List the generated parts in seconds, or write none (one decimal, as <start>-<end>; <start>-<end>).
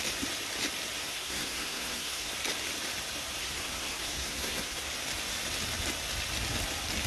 1.0-2.3; 3.4-4.9